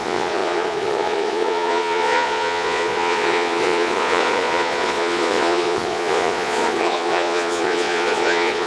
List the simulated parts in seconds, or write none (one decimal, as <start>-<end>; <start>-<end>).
0.0-8.7